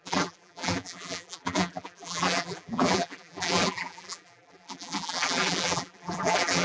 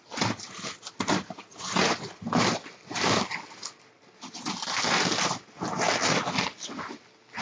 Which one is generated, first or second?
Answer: first